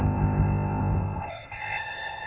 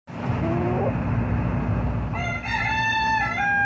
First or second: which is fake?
first